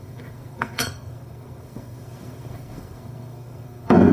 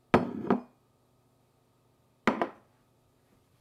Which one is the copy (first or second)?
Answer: first